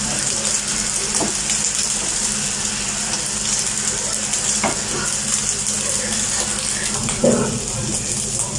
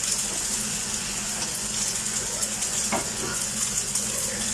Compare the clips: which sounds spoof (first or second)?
second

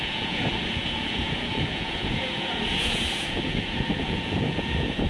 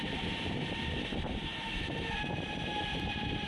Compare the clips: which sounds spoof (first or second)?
first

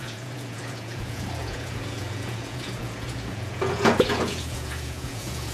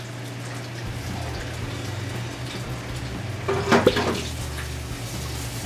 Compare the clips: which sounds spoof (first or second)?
first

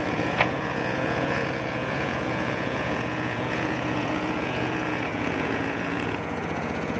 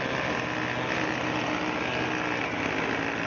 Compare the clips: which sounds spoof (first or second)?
first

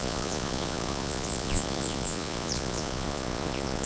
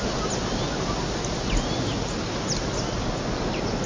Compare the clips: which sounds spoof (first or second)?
first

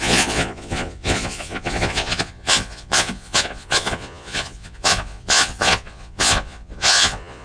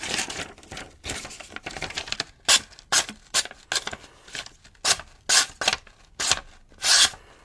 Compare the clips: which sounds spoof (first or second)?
first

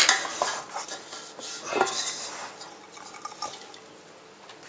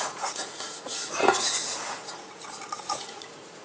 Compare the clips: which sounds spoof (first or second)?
second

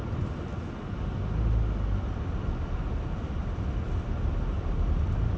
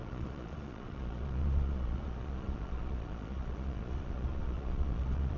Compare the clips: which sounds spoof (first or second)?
second